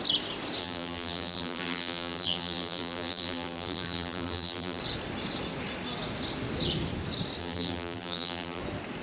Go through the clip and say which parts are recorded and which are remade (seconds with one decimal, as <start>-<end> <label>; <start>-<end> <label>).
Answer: 0.0-0.6 recorded; 0.6-4.8 remade; 4.8-7.4 recorded; 7.4-8.6 remade; 8.6-9.0 recorded